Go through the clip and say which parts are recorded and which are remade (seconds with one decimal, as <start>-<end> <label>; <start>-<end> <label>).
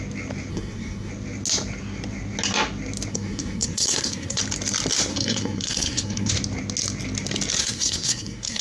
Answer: 0.0-0.5 recorded; 0.5-1.1 remade; 1.1-3.1 recorded; 3.1-4.4 remade; 4.4-5.1 recorded; 5.1-6.3 remade; 6.3-7.6 recorded; 7.6-8.6 remade